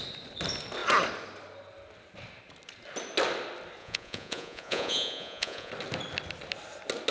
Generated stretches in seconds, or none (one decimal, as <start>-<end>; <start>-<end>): 3.8-5.7